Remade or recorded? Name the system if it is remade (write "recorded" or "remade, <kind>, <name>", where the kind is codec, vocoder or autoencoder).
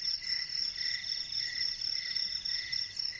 recorded